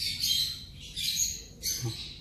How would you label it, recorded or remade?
recorded